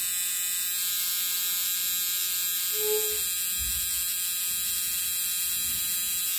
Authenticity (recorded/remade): recorded